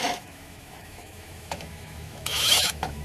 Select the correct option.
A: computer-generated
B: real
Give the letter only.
A